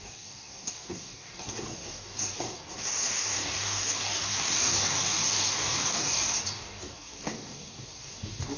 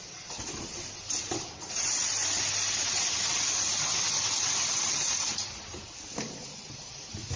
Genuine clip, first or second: second